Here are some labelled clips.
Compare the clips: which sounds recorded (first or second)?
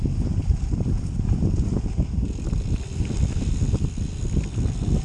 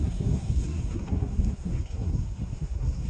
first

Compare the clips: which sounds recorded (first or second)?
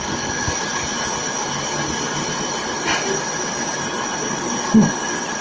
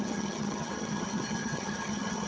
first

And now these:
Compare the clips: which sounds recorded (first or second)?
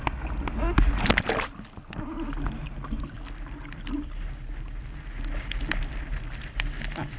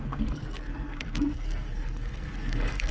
first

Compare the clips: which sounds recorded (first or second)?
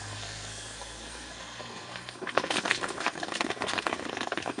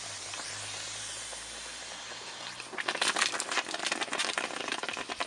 second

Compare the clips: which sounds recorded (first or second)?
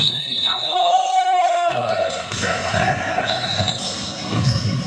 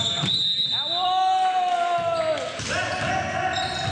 second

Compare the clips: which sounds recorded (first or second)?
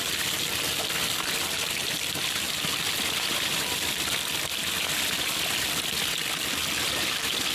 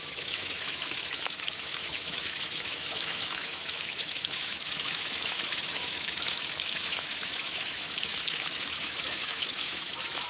first